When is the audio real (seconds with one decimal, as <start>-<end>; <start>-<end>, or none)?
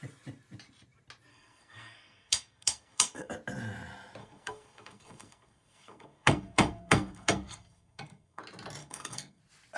0.0-1.3; 3.3-4.2; 8.4-8.8; 9.4-9.8